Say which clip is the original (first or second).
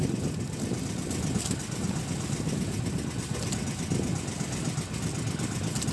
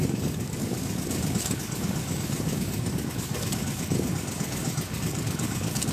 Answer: first